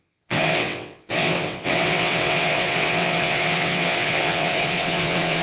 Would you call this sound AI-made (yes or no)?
yes